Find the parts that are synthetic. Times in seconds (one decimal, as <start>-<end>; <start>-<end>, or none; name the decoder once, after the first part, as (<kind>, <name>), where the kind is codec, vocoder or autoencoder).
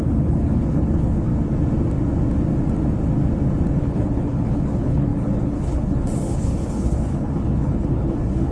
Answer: 0.0-1.3 (codec, HILCodec); 3.8-8.5